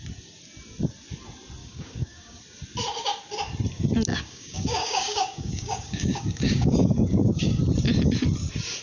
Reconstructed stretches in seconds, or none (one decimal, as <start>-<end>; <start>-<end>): 1.6-2.4; 4.1-7.6